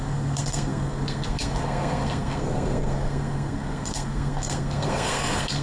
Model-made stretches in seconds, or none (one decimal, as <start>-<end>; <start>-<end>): 0.0-5.6